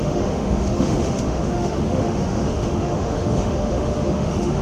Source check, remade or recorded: remade